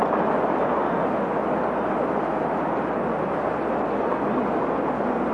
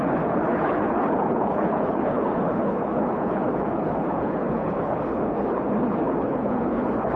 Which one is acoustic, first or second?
first